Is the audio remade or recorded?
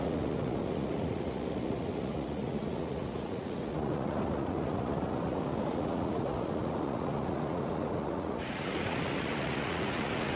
remade